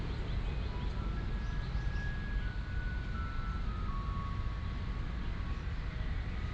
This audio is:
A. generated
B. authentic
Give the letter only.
B